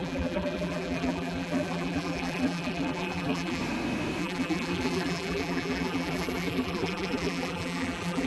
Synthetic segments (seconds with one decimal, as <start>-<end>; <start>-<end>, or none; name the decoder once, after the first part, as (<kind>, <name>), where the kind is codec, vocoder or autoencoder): 0.0-3.6 (vocoder, BigVGAN v2); 4.2-8.3